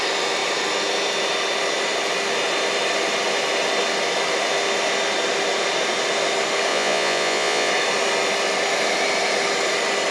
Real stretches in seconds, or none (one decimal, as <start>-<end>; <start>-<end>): 0.0-6.7; 7.7-10.1